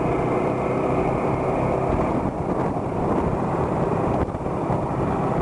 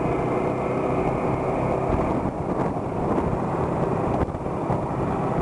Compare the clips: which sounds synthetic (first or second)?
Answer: first